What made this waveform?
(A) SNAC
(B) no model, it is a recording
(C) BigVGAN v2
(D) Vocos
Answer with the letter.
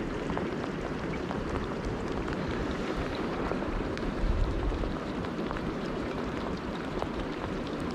C